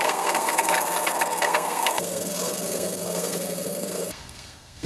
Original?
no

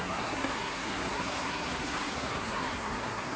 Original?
no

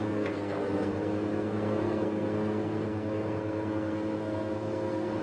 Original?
no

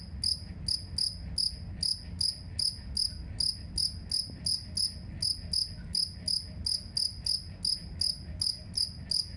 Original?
yes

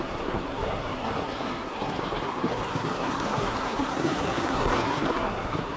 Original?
no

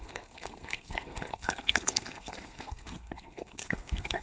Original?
no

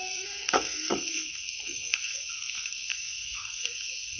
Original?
no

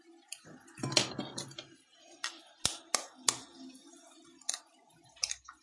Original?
yes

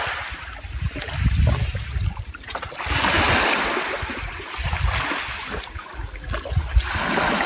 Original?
yes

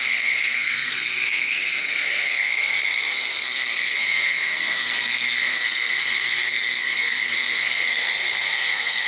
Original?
no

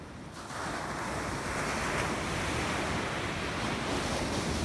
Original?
yes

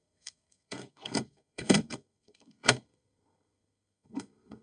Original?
no